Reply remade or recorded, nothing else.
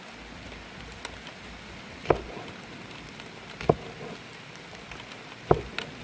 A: recorded